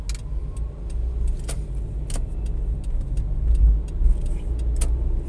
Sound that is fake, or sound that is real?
real